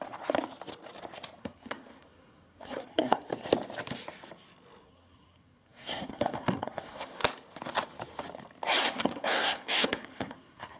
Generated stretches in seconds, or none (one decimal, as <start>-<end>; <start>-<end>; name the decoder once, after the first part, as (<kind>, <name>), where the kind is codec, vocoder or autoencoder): 1.4-3.3 (codec, SNAC); 4.8-7.2; 8.8-10.8